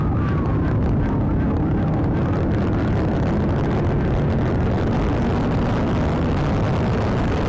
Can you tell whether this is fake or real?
real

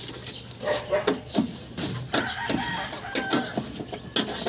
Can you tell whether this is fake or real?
real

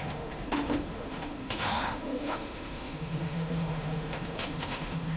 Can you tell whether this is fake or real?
fake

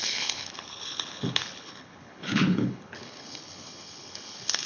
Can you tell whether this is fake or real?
fake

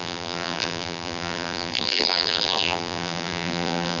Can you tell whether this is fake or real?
fake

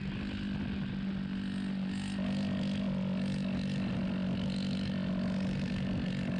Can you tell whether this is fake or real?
real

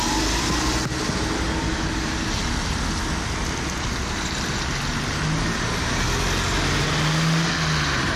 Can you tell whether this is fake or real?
real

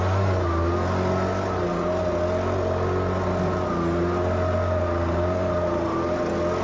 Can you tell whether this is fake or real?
real